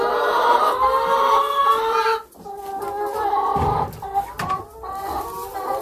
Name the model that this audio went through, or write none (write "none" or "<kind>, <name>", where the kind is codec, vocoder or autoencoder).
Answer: none